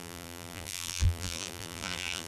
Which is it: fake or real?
fake